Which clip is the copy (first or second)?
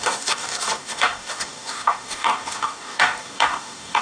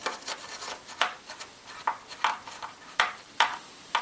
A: first